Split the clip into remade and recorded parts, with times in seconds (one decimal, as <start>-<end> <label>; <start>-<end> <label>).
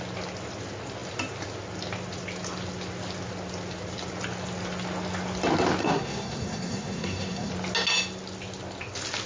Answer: 0.0-5.8 recorded; 5.8-7.5 remade; 7.5-9.3 recorded